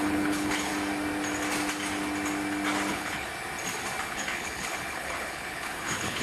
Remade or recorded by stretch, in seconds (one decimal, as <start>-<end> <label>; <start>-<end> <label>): 0.0-0.7 remade; 0.7-2.9 recorded; 2.9-3.3 remade; 3.3-4.0 recorded; 4.0-6.2 remade